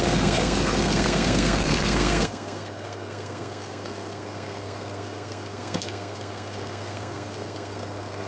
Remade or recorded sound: remade